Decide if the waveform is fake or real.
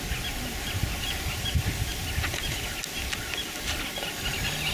real